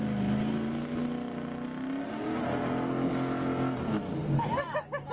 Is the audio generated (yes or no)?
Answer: no